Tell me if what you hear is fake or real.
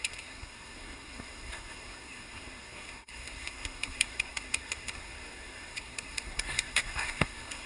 fake